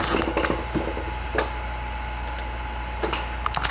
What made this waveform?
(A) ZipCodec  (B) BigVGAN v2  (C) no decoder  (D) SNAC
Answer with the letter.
C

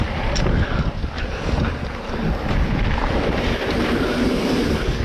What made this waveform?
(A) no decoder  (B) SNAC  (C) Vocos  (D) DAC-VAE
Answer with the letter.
A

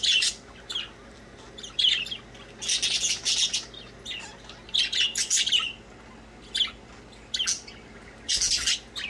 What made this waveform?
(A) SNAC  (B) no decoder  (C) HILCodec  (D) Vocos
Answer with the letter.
B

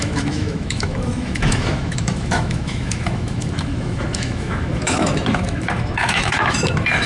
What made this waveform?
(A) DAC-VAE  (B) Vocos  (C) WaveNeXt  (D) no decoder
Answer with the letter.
A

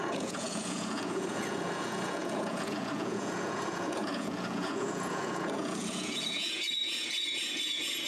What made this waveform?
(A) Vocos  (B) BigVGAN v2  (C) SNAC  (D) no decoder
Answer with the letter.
A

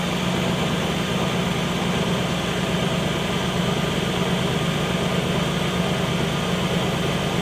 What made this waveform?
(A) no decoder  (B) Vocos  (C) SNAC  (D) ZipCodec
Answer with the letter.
A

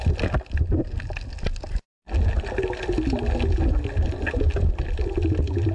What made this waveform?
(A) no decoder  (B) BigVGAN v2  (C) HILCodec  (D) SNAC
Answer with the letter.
A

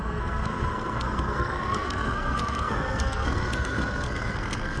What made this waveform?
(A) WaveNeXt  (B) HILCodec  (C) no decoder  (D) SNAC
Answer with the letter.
D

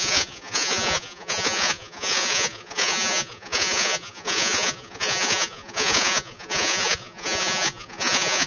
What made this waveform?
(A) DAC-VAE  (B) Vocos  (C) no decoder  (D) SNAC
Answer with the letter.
B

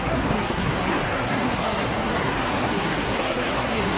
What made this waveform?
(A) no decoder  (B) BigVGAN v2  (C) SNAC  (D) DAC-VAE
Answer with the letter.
C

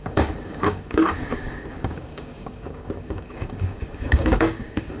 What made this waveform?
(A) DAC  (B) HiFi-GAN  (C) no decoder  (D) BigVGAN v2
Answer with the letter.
A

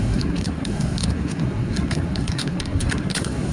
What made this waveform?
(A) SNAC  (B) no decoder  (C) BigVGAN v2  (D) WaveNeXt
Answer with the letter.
A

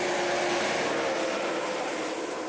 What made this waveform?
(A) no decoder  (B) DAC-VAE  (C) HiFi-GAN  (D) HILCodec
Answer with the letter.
A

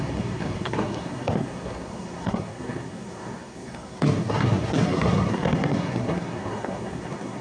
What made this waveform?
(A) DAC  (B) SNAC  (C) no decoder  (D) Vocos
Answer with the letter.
B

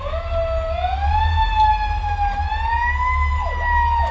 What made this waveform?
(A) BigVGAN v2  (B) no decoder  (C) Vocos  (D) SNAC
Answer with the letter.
B